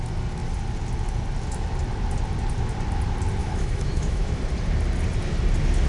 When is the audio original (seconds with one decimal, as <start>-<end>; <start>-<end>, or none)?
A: 0.0-3.4; 4.4-5.9